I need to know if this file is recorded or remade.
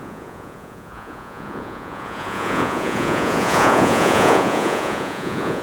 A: remade